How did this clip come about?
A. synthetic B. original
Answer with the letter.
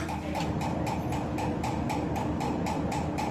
B